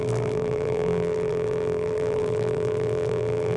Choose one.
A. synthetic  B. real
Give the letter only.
A